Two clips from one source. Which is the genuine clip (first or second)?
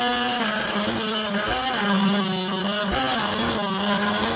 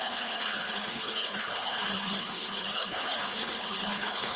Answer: first